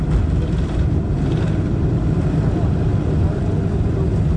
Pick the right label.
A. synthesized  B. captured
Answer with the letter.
B